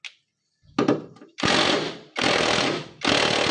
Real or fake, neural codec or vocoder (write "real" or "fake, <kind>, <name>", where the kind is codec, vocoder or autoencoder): real